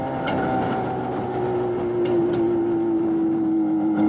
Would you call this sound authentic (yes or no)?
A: yes